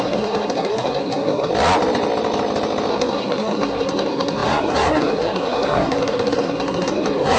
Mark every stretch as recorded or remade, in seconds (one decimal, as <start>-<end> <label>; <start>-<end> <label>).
0.0-1.5 remade; 1.5-2.9 recorded; 2.9-7.4 remade